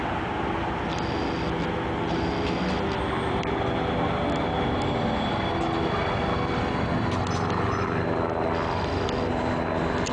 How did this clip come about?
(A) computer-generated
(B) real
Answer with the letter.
B